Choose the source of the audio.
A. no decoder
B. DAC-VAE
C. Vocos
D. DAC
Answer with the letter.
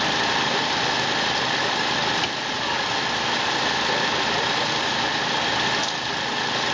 A